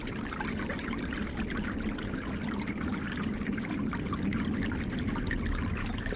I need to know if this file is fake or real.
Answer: real